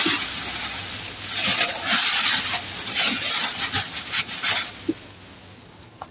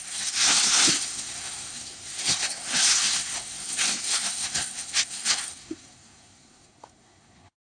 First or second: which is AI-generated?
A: second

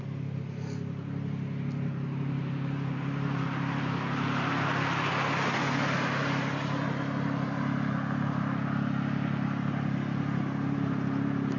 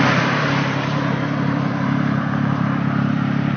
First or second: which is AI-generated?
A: second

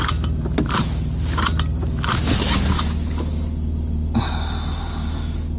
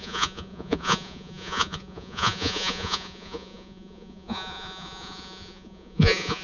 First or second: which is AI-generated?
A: second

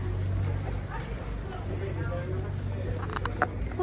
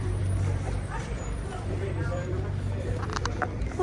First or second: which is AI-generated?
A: second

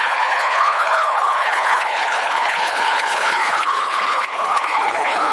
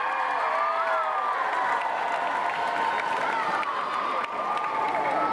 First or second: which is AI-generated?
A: first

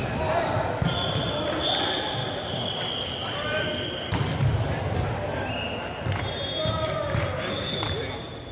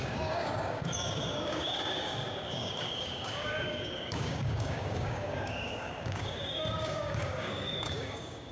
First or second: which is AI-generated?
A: second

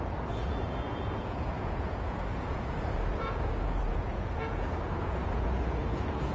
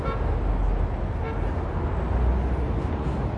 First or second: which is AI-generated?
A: first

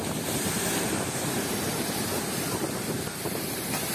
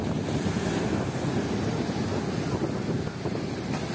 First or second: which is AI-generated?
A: first